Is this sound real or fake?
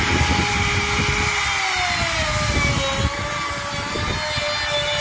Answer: real